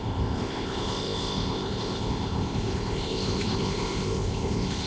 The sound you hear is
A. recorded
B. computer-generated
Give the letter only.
B